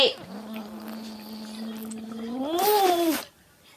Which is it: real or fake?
real